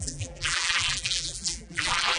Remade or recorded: remade